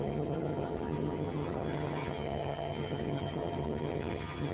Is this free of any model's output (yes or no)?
no